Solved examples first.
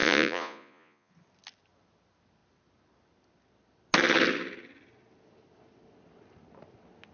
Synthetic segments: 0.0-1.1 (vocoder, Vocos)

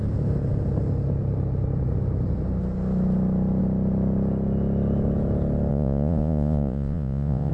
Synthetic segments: 5.7-7.5 (vocoder, Vocos)

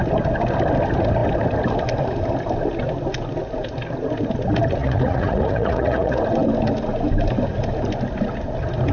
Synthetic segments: 4.8-6.2 (vocoder, Vocos)

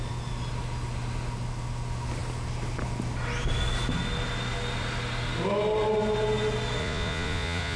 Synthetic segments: 6.8-7.8 (vocoder, Vocos)

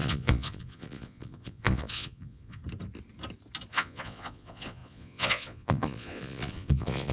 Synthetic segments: 0.0-2.6 (vocoder, Vocos); 3.7-7.1